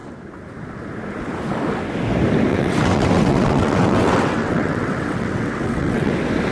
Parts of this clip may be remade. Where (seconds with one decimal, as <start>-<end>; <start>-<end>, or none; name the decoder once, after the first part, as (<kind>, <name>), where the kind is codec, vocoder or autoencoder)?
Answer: 2.5-6.1 (vocoder, WaveNeXt)